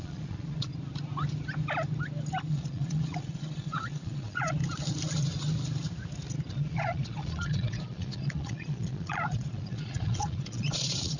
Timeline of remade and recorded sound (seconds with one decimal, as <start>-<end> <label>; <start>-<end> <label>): 0.0-0.7 remade; 0.7-2.5 recorded; 2.5-4.6 remade; 4.6-6.5 recorded; 6.5-11.2 remade